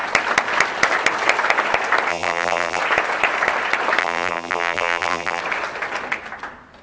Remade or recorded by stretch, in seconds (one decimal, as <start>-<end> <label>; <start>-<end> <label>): 0.0-2.1 recorded; 2.1-2.8 remade; 2.8-4.0 recorded; 4.0-5.4 remade; 5.4-6.8 recorded